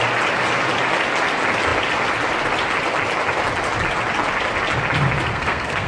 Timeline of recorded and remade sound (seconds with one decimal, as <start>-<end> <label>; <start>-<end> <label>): 0.0-5.3 recorded; 5.3-5.9 remade